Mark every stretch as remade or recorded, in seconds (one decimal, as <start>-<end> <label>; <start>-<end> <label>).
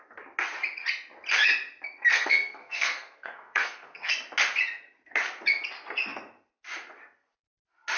0.0-2.1 recorded; 2.1-4.1 remade; 4.1-8.0 recorded